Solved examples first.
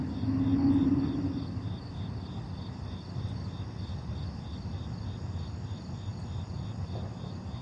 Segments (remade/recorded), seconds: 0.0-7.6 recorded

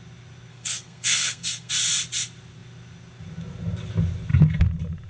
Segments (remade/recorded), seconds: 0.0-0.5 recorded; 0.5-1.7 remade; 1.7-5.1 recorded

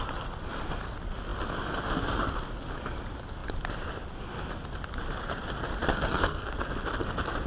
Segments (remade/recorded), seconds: 0.0-5.9 recorded; 5.9-6.6 remade; 6.6-7.5 recorded

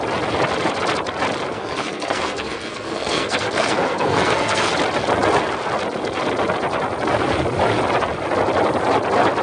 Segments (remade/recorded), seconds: 0.0-1.5 recorded; 1.5-4.7 remade; 4.7-9.4 recorded

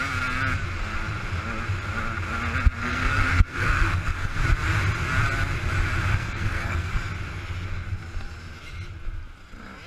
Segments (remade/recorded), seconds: 0.0-2.8 recorded; 2.8-4.4 remade; 4.4-6.1 recorded; 6.1-7.1 remade; 7.1-9.9 recorded

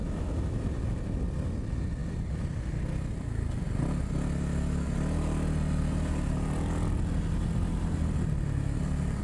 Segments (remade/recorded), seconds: 0.0-9.2 recorded

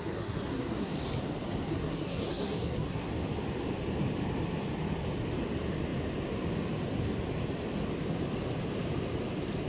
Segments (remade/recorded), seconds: 0.0-0.9 remade; 0.9-1.7 recorded; 1.7-3.1 remade; 3.1-9.7 recorded

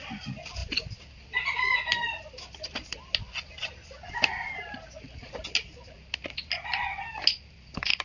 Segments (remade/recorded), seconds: 0.0-8.0 recorded